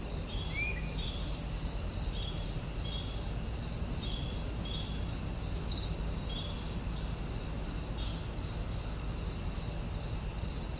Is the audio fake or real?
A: real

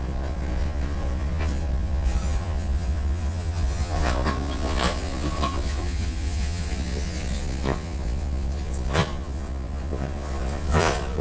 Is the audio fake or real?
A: fake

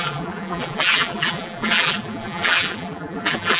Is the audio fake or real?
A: fake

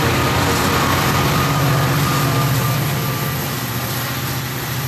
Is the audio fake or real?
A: fake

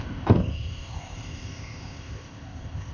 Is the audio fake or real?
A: fake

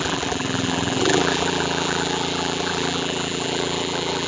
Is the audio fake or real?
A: fake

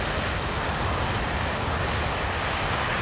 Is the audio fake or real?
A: real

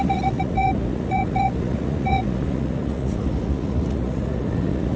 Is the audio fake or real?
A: fake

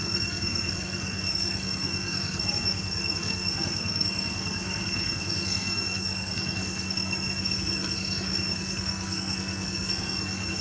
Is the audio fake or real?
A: fake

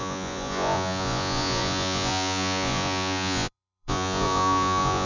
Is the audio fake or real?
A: fake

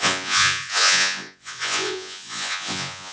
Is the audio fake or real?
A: fake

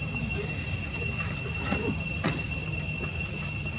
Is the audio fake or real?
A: real